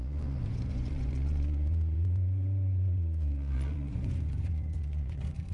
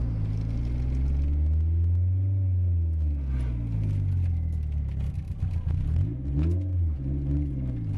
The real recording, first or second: second